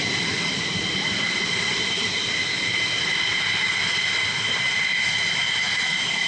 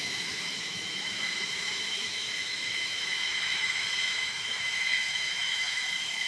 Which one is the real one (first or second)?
first